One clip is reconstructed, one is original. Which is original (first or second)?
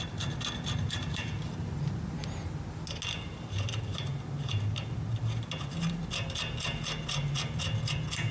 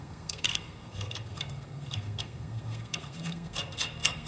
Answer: first